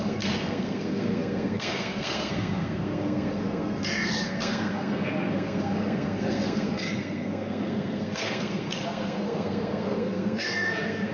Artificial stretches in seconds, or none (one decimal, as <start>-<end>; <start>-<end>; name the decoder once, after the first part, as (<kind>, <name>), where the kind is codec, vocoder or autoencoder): 0.0-11.1 (codec, SNAC)